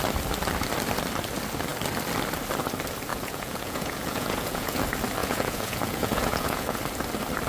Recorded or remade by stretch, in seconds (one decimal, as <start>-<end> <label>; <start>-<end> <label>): 0.0-3.1 recorded; 3.1-4.8 remade; 4.8-5.2 recorded; 5.2-6.8 remade; 6.8-7.5 recorded

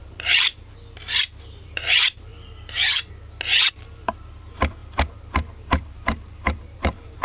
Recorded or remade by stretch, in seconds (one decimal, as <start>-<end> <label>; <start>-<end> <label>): 0.0-0.5 remade; 0.5-1.5 recorded; 1.5-2.3 remade; 2.3-3.7 recorded; 3.7-7.2 remade